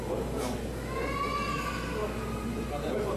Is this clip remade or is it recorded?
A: recorded